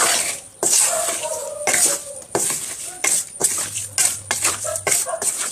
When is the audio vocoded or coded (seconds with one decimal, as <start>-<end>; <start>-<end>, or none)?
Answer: 0.0-1.4; 2.1-3.4; 4.7-5.5